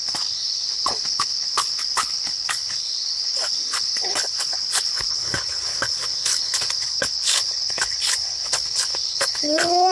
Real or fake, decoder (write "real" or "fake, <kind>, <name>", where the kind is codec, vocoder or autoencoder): fake, codec, HILCodec